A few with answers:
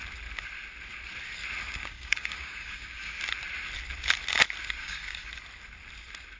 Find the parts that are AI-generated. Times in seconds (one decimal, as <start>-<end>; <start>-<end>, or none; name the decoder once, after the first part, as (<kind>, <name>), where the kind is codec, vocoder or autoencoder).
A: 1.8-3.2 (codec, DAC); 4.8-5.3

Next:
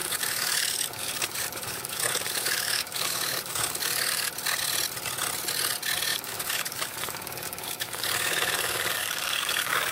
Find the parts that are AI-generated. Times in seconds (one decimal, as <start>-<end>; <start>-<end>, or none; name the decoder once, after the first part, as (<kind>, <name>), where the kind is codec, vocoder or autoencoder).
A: 0.0-4.3 (codec, DAC); 6.1-9.9

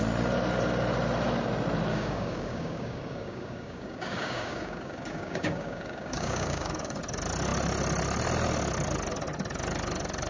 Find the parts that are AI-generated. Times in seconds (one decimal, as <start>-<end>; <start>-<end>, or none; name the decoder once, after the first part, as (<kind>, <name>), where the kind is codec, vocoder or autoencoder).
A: 1.9-7.0 (codec, DAC)

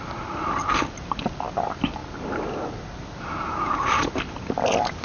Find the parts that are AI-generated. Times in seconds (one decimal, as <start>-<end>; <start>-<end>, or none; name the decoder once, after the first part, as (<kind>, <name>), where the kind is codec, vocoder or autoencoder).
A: none